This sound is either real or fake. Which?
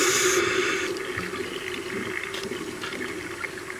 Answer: real